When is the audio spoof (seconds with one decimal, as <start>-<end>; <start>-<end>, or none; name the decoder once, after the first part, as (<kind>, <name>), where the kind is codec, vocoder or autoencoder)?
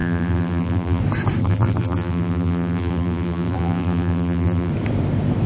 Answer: 0.0-1.0 (vocoder, BigVGAN v2); 1.4-4.7